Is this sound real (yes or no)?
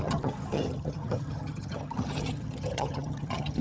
no